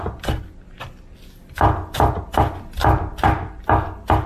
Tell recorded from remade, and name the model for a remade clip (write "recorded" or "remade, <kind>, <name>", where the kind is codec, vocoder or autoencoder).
recorded